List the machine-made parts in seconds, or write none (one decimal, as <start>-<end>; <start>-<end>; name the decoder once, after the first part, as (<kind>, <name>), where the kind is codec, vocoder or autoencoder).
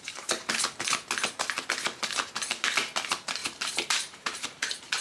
3.4-5.0 (vocoder, BigVGAN v2)